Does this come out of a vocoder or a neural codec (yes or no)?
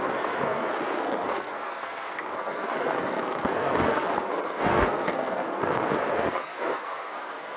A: yes